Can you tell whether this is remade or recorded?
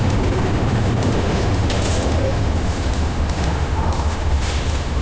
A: remade